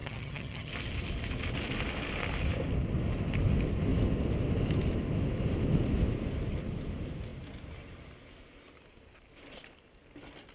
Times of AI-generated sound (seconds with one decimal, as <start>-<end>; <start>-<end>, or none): 0.0-0.7